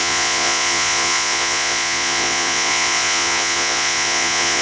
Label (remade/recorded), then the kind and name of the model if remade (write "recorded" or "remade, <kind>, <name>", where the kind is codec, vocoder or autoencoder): remade, vocoder, Vocos